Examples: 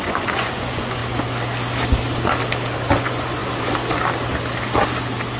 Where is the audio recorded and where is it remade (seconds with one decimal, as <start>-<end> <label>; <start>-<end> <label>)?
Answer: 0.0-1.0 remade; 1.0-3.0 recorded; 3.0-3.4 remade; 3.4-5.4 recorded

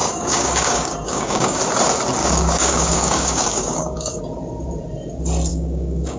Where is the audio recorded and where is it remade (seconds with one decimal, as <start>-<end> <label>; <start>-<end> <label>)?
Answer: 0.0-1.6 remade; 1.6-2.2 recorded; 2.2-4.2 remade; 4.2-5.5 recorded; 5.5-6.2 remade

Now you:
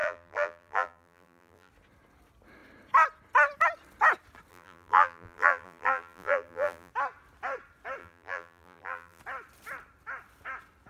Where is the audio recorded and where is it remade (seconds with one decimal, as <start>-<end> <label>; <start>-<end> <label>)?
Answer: 0.0-1.7 remade; 1.7-4.5 recorded; 4.5-6.9 remade; 6.9-8.0 recorded; 8.0-9.2 remade; 9.2-10.9 recorded

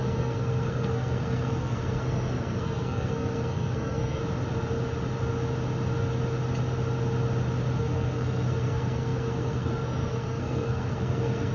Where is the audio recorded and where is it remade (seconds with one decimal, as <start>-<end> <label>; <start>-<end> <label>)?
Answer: 0.0-4.2 remade; 4.2-7.8 recorded; 7.8-11.5 remade

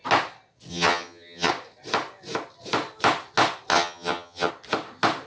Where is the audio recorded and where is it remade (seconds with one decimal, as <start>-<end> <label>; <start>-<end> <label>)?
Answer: 0.0-0.7 recorded; 0.7-1.5 remade; 1.5-3.7 recorded; 3.7-4.5 remade; 4.5-5.3 recorded

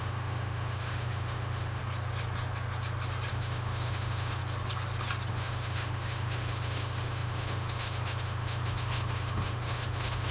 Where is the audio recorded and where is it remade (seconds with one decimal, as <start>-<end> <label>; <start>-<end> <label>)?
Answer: 0.0-1.8 remade; 1.8-3.3 recorded; 3.3-4.4 remade; 4.4-5.3 recorded; 5.3-10.3 remade

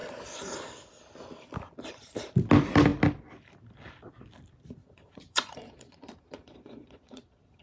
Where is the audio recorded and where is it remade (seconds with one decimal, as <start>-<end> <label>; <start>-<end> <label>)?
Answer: 0.0-4.8 recorded; 4.8-7.6 remade

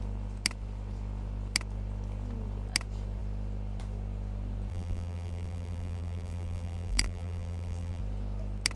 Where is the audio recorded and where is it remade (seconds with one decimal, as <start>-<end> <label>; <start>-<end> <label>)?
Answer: 0.0-4.7 recorded; 4.7-8.0 remade; 8.0-8.8 recorded